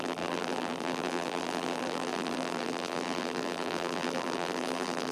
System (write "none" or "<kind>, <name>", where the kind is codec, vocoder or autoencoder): vocoder, BigVGAN v2